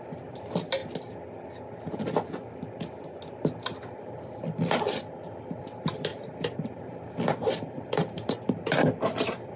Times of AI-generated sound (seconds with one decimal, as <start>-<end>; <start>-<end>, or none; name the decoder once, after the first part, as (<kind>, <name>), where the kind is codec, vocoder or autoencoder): 0.0-0.8 (vocoder, BigVGAN v2); 4.0-9.6